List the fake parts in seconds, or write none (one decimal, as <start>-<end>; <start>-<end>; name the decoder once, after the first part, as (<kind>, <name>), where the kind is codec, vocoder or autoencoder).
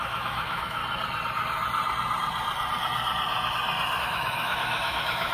0.0-0.8 (autoencoder, DAC-VAE); 4.0-5.3